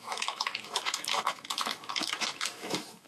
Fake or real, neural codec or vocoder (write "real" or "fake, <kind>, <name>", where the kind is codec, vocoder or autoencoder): fake, autoencoder, DAC-VAE